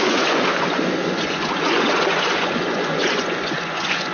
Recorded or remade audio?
remade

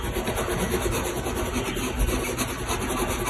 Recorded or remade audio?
recorded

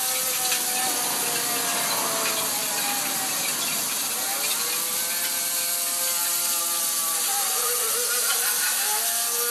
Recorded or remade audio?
recorded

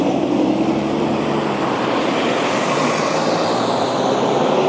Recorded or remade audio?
remade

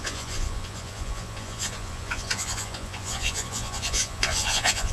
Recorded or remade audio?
remade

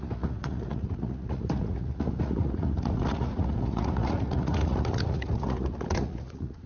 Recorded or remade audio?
remade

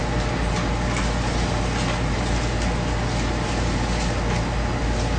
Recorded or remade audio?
recorded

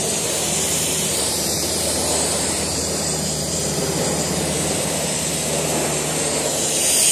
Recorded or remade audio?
remade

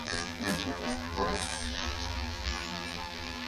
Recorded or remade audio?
remade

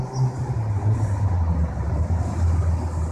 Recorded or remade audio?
recorded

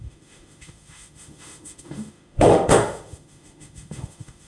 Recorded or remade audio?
remade